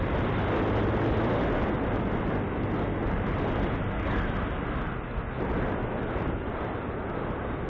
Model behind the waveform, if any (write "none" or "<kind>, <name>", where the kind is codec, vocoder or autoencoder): none